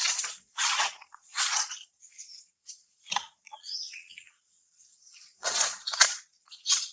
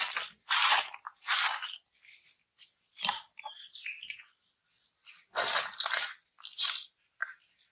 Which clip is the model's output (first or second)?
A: first